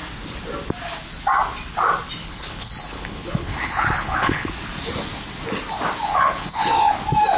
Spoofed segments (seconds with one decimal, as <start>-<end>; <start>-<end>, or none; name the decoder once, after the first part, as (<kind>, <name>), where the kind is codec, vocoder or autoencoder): 2.2-4.5 (codec, HILCodec); 6.1-6.9